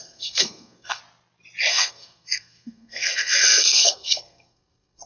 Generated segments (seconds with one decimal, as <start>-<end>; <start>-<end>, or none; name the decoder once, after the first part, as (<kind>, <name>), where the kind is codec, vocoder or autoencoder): 0.0-1.0 (codec, SNAC); 1.7-5.1